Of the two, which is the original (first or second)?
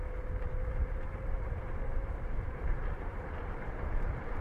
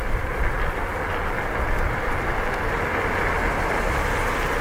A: second